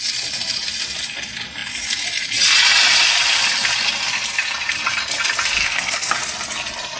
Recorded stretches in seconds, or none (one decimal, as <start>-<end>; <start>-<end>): 0.0-5.6; 6.1-7.0

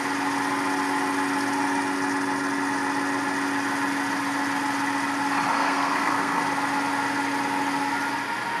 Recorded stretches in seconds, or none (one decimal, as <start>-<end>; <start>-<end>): 0.0-5.5; 6.4-8.6

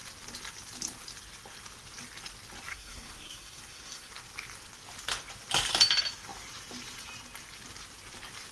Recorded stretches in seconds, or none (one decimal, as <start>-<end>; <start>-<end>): 0.0-2.7; 4.1-8.5

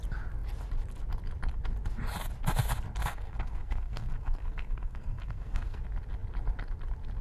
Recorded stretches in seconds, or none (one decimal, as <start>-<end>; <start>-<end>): 0.0-3.0; 5.8-7.2

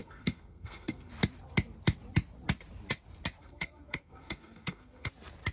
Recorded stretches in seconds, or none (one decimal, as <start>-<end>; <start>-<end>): 1.1-3.4; 5.1-5.5